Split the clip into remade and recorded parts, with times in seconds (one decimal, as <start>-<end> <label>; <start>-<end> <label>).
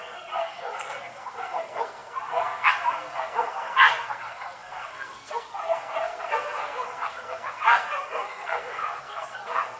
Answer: 0.0-9.8 remade